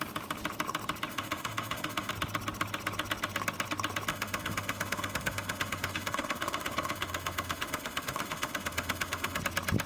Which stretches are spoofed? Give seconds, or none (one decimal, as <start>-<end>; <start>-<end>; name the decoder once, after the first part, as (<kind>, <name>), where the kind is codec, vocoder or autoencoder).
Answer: 1.1-2.1 (autoencoder, DAC-VAE); 4.1-9.4